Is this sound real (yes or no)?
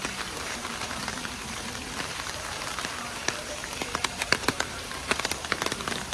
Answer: no